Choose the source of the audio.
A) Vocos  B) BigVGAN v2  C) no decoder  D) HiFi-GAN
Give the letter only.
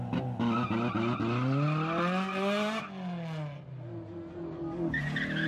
C